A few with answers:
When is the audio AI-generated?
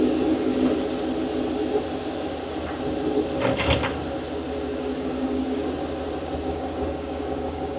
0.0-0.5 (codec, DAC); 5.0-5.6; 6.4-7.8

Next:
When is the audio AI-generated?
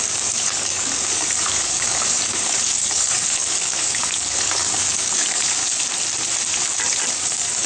0.0-5.6 (codec, DAC); 7.1-7.7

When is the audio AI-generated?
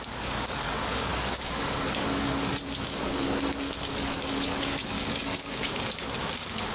0.0-6.7 (codec, DAC)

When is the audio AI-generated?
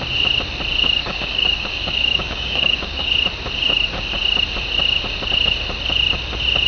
1.0-3.1 (codec, DAC)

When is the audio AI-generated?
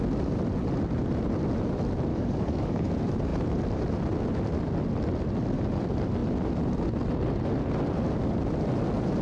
2.1-2.9 (codec, DAC)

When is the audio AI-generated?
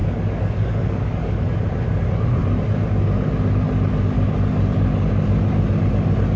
0.0-1.4 (codec, DAC)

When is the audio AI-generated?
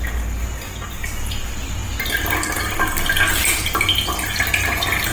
none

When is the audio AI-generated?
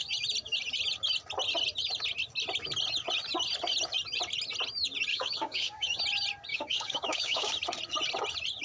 5.1-6.0 (codec, DAC); 6.5-7.5